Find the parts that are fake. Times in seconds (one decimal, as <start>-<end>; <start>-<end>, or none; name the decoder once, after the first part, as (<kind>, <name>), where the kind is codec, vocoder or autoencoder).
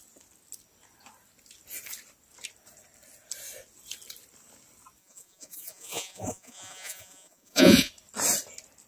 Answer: 5.0-7.9 (vocoder, Vocos)